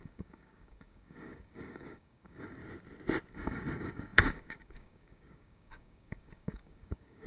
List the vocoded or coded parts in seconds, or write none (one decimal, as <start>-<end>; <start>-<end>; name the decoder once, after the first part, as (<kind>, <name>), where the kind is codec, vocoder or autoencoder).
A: 0.0-2.6 (codec, DAC); 3.3-7.3